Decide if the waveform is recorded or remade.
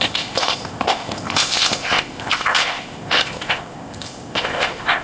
remade